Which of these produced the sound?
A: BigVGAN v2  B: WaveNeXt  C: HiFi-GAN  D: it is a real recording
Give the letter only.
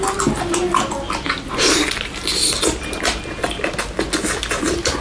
D